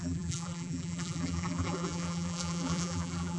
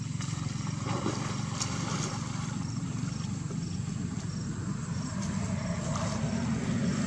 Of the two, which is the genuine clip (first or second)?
second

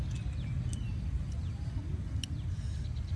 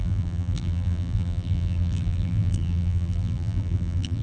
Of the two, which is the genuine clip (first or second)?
first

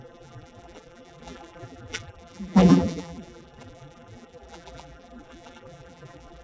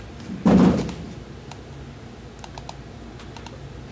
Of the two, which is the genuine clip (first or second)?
second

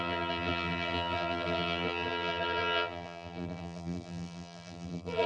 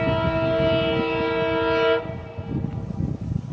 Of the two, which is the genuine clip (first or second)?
second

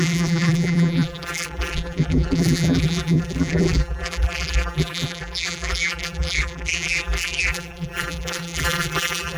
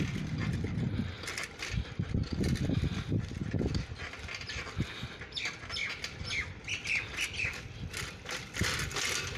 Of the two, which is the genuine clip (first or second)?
second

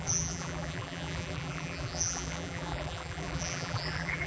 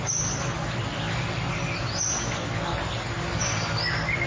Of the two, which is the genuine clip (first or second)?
second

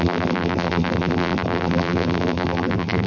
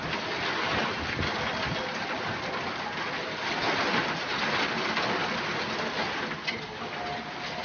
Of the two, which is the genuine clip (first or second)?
second